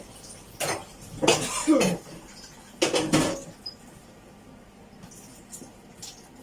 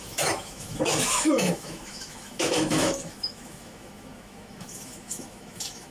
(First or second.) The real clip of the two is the first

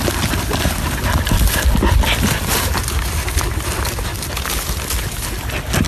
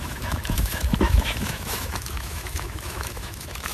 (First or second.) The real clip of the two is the first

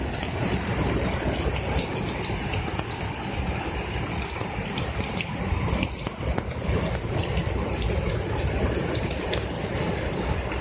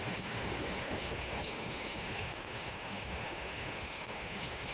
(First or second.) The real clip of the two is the first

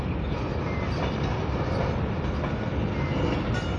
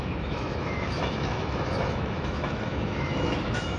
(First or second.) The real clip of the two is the first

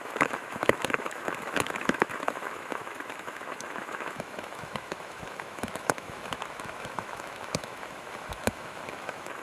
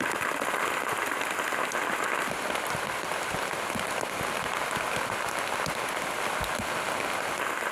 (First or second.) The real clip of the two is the second